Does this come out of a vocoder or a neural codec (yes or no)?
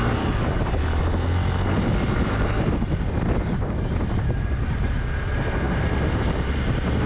no